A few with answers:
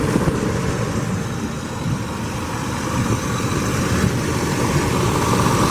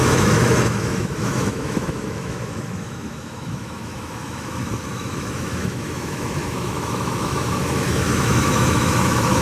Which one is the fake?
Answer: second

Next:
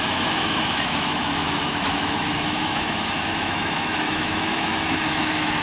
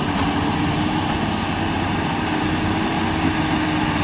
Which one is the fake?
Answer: first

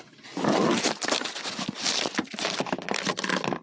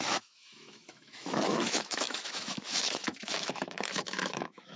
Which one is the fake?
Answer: second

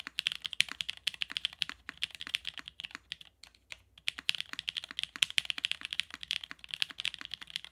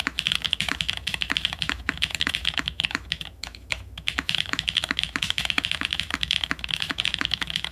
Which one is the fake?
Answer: second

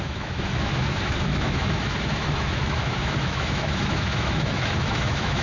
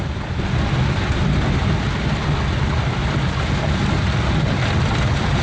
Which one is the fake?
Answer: first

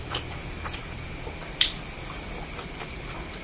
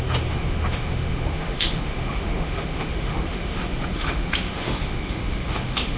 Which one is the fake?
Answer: second